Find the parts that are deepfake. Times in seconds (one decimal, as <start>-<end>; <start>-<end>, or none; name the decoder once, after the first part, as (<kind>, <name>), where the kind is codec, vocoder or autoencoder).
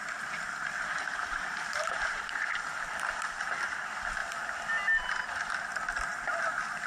1.2-2.2 (vocoder, BigVGAN v2)